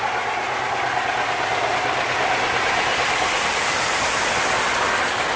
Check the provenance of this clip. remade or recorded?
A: recorded